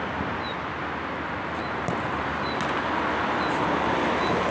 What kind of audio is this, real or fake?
real